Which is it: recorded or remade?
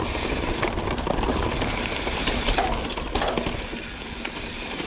recorded